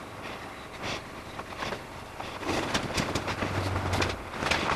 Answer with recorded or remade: recorded